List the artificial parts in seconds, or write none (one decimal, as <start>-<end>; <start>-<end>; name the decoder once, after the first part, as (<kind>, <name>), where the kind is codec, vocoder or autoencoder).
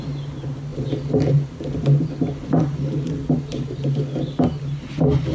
none